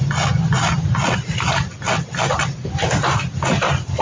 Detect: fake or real real